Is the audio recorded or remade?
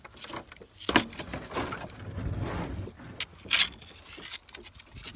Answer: recorded